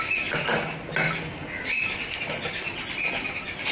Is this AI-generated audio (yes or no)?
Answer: no